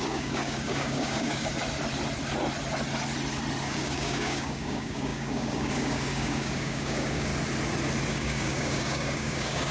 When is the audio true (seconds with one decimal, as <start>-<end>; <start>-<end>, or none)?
1.5-3.6; 7.3-8.1